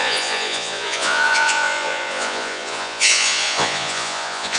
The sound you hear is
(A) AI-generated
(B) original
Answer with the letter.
A